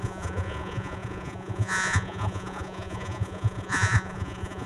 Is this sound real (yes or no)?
no